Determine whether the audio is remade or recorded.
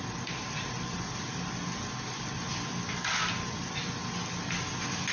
recorded